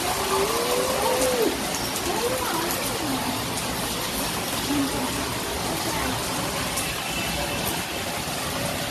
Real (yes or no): yes